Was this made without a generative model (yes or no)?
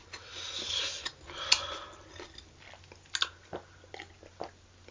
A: yes